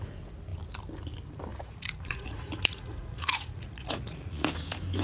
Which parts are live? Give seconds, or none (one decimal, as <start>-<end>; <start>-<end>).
0.0-1.5; 4.5-5.0